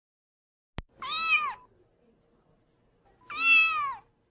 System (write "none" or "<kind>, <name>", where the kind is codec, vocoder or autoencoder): none